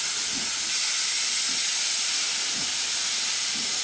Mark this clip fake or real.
real